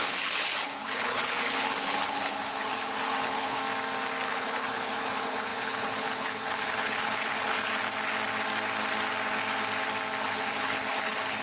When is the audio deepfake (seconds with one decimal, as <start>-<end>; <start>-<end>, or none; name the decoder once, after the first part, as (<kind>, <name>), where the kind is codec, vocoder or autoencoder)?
0.0-3.6 (codec, HILCodec); 4.3-7.7; 10.2-11.4